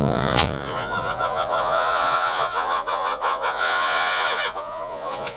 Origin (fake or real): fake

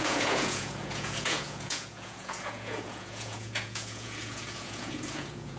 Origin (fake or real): fake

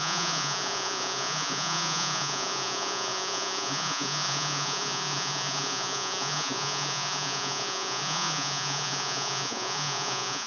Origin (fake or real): fake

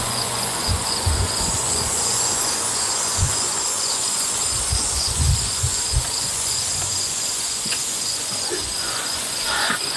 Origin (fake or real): fake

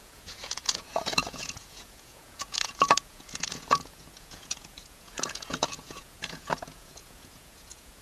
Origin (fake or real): fake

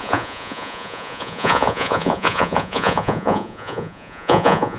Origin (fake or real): fake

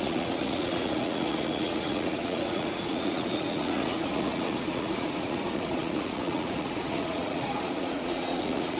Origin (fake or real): fake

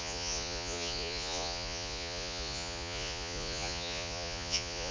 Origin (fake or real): fake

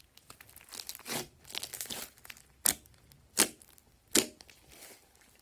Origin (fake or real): real